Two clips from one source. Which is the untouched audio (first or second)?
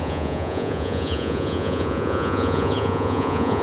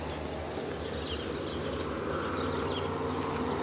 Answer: second